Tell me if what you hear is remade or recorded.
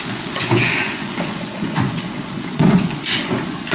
remade